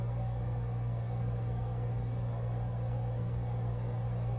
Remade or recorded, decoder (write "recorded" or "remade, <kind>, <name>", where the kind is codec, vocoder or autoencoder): remade, codec, SNAC